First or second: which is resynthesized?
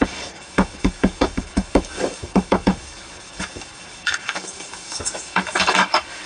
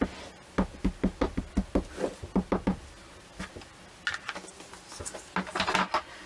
first